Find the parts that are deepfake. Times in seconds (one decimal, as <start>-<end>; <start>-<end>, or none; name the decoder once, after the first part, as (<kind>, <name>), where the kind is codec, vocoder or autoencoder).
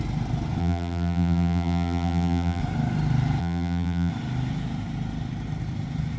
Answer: 0.6-2.6 (vocoder, BigVGAN v2); 3.4-4.1